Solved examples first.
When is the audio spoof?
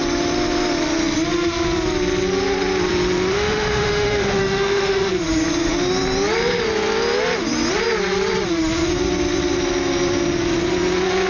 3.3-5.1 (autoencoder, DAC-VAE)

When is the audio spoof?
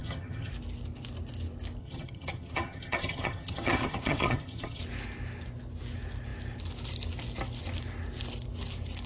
0.0-0.5 (vocoder, HiFi-GAN); 1.8-4.8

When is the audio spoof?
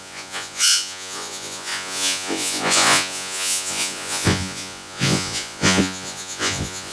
0.0-6.9 (vocoder, Vocos)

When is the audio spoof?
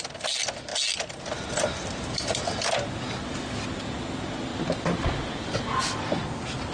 none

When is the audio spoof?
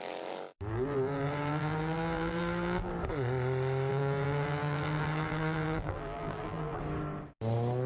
0.7-2.9 (vocoder, BigVGAN v2); 3.9-6.8